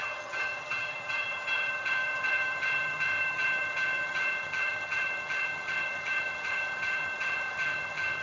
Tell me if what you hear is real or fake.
fake